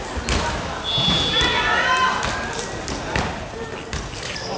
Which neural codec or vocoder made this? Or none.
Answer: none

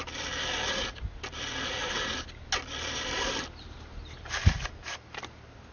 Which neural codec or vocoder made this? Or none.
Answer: none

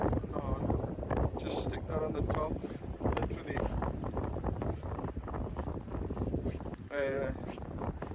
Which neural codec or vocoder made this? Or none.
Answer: vocoder, BigVGAN v2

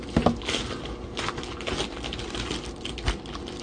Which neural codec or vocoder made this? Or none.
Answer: none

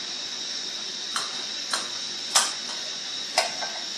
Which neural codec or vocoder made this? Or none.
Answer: vocoder, Vocos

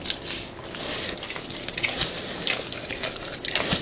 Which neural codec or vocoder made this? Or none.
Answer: none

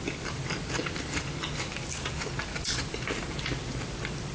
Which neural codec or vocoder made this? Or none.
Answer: none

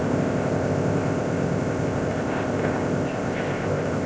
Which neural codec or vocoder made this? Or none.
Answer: codec, ZipCodec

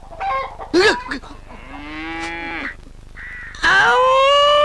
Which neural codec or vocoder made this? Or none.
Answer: none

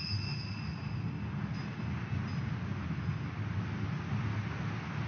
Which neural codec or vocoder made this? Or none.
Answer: none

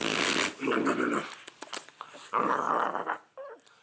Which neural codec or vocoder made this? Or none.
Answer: none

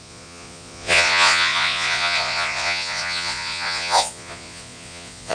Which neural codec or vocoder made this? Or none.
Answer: vocoder, Vocos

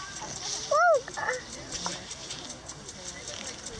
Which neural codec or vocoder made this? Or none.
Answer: none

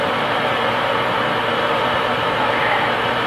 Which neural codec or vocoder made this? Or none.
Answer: vocoder, BigVGAN v2